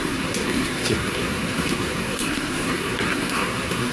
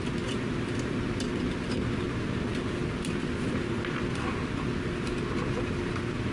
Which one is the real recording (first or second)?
second